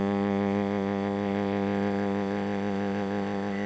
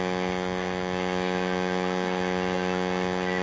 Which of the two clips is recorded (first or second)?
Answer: second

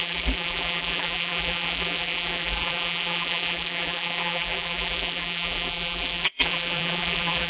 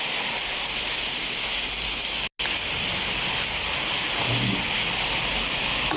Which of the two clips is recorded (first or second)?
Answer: second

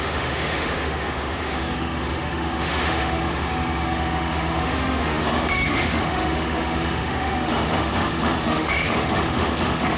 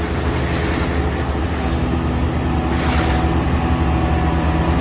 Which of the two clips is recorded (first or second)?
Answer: second